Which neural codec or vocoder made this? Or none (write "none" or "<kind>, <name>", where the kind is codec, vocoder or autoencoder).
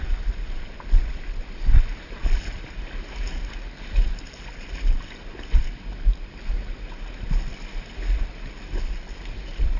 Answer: none